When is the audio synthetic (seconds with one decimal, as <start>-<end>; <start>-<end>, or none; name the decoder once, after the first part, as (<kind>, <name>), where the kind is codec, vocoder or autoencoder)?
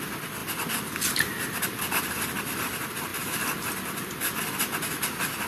none